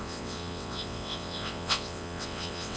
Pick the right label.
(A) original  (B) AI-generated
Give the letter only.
B